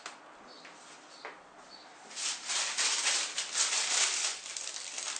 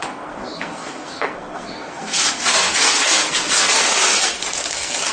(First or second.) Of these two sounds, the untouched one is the first